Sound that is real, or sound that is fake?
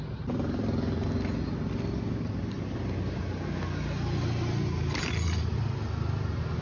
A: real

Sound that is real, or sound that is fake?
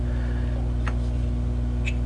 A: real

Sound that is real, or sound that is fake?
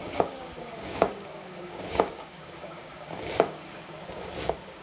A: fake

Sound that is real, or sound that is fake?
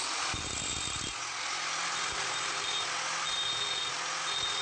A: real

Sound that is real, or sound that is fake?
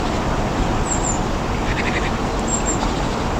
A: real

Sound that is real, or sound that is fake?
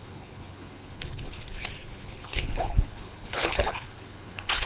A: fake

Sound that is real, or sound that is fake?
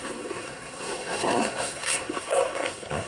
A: fake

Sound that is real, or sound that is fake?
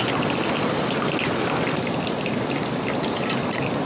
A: real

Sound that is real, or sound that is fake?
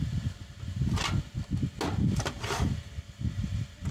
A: real